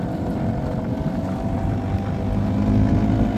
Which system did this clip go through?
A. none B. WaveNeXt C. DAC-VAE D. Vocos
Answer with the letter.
A